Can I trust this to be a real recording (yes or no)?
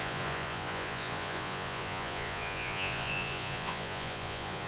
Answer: no